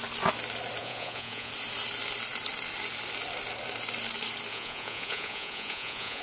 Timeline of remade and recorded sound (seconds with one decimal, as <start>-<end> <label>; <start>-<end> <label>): 0.0-0.8 recorded; 0.8-1.5 remade; 1.5-4.5 recorded; 4.5-6.2 remade